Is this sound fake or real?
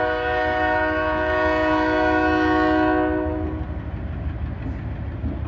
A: real